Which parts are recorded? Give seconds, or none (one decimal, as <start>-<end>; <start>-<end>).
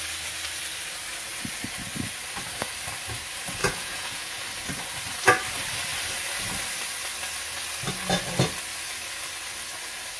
0.0-3.6; 4.4-10.2